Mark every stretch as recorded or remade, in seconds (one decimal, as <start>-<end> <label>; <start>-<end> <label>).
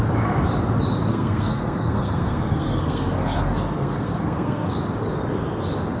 0.0-1.1 recorded; 1.1-4.7 remade; 4.7-6.0 recorded